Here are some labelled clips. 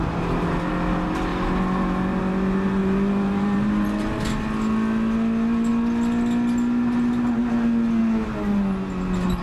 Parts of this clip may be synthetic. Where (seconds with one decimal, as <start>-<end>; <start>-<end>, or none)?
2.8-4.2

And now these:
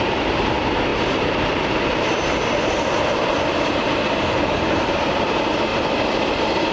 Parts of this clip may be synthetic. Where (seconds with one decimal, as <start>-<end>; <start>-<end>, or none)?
0.0-5.7; 6.3-6.7

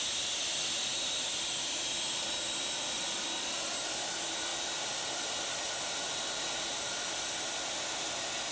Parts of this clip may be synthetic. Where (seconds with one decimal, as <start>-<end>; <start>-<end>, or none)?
none

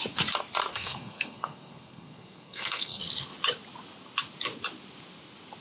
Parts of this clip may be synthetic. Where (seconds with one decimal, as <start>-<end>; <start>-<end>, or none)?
0.7-3.0

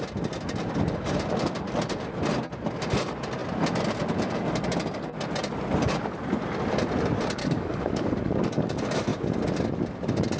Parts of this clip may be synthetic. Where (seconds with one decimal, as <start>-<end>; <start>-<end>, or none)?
7.4-8.7